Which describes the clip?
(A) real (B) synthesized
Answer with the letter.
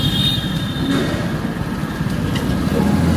A